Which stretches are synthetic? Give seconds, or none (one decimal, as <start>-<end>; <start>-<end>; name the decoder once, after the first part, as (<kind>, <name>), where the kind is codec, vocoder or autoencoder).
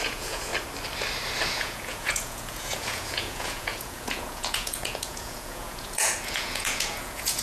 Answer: 0.0-0.5 (vocoder, Vocos); 1.5-7.4